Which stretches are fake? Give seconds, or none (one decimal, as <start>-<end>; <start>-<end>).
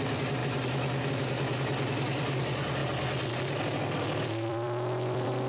0.0-2.8; 3.9-5.5